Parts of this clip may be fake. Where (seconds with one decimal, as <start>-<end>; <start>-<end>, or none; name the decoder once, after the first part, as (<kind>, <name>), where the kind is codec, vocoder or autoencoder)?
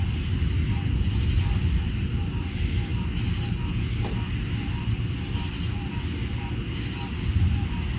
none